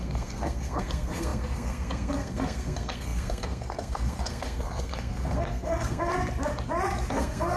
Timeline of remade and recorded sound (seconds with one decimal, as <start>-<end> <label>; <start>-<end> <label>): 0.0-6.1 remade; 6.1-7.1 recorded; 7.1-7.6 remade